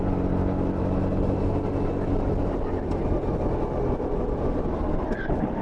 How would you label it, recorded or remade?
recorded